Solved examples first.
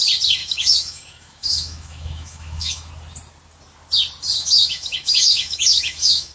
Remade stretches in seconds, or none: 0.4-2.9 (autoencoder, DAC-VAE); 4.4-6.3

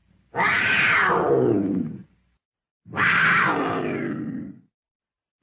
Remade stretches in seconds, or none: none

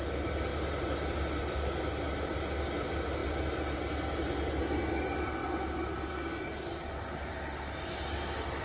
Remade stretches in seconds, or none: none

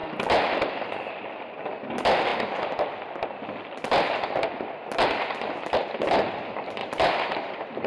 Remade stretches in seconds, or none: 6.8-7.5 (vocoder, BigVGAN v2)